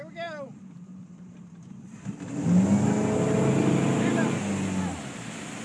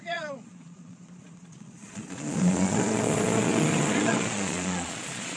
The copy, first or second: second